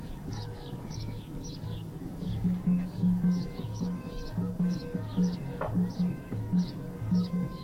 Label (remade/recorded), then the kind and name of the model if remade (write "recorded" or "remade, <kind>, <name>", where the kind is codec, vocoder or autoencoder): remade, codec, DAC